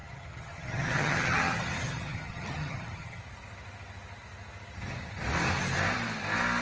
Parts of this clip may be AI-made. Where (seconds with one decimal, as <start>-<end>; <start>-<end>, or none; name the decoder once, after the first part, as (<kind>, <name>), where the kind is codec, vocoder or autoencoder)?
0.0-3.2 (vocoder, HiFi-GAN)